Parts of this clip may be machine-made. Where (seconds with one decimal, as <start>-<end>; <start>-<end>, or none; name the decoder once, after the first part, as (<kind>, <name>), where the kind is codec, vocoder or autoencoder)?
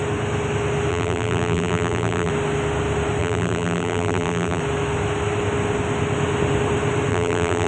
0.9-2.3 (vocoder, BigVGAN v2); 3.2-4.6; 7.1-7.7